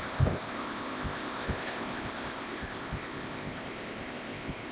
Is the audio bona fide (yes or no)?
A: no